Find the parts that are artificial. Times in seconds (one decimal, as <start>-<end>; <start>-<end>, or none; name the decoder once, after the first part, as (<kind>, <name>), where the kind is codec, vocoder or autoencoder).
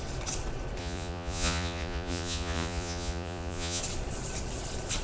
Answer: 0.8-3.8 (vocoder, Vocos)